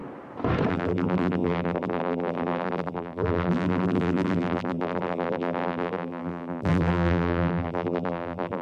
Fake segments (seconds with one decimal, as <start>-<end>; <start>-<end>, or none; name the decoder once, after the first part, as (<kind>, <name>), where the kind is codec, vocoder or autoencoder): 0.7-8.6 (vocoder, BigVGAN v2)